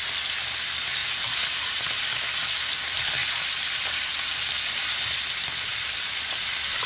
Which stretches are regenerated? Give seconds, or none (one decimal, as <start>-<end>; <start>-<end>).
none